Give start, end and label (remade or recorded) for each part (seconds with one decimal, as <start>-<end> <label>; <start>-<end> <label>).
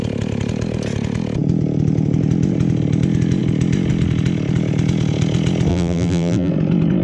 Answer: 0.0-5.7 recorded; 5.7-6.5 remade; 6.5-7.0 recorded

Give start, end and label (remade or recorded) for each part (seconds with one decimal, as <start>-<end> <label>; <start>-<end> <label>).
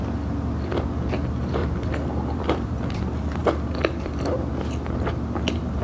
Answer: 0.0-1.6 recorded; 1.6-3.0 remade; 3.0-3.4 recorded; 3.4-4.3 remade; 4.3-5.8 recorded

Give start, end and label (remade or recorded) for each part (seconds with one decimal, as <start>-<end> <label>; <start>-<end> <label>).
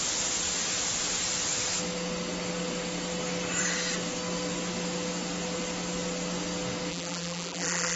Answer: 0.0-6.9 recorded; 6.9-8.0 remade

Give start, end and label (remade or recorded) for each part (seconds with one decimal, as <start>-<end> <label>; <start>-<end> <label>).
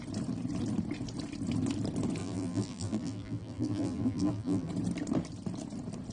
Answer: 0.0-2.2 recorded; 2.2-4.7 remade; 4.7-6.1 recorded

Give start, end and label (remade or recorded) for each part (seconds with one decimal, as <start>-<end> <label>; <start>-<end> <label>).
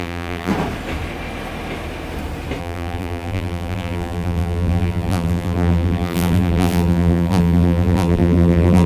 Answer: 0.0-0.5 remade; 0.5-2.6 recorded; 2.6-8.9 remade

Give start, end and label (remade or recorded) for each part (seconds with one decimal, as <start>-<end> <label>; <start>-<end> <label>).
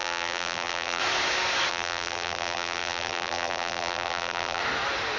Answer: 0.0-1.0 remade; 1.0-1.7 recorded; 1.7-4.6 remade; 4.6-5.2 recorded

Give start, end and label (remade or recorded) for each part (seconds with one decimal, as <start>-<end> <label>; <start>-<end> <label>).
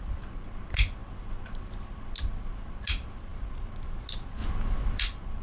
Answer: 0.0-5.4 recorded